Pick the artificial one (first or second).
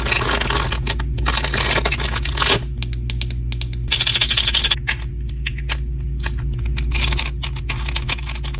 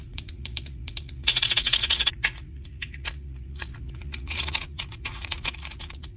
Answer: second